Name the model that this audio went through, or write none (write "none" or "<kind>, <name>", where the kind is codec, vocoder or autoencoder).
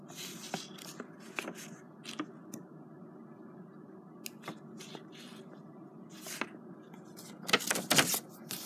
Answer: none